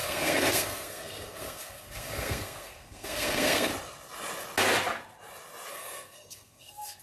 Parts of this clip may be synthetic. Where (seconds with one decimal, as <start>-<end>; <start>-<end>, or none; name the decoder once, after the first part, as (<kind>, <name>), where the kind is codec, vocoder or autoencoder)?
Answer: 0.0-3.7 (codec, SNAC); 5.7-7.0